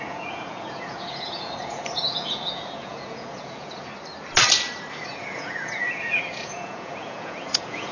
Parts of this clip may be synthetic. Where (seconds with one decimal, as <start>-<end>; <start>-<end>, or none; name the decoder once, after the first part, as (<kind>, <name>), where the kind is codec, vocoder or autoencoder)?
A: 0.0-3.9 (vocoder, Vocos); 5.0-7.9